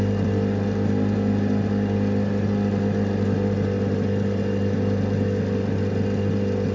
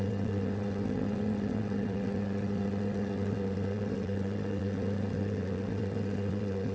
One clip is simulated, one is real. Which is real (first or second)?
first